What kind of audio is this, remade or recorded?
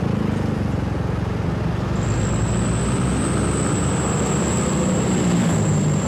recorded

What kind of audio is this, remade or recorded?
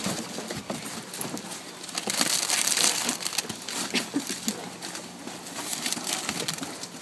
recorded